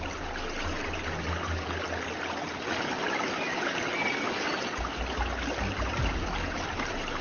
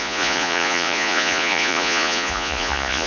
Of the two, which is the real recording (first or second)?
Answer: first